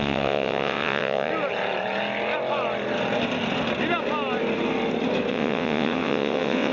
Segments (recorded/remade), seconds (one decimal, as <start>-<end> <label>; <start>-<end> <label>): 0.0-1.3 remade; 1.3-5.3 recorded; 5.3-6.7 remade